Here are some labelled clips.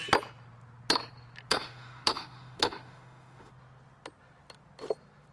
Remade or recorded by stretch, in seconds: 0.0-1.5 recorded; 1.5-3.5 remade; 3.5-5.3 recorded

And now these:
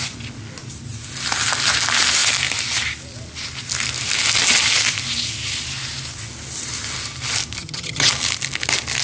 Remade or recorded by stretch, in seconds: 0.0-7.6 recorded; 7.6-8.1 remade; 8.1-9.0 recorded